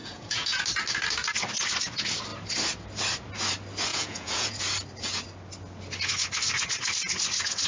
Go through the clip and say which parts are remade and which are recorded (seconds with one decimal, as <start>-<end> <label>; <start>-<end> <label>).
0.0-0.6 remade; 0.6-3.9 recorded; 3.9-4.6 remade; 4.6-7.7 recorded